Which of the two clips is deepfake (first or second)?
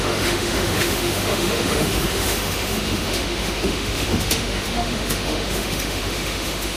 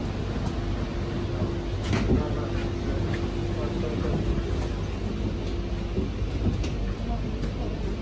first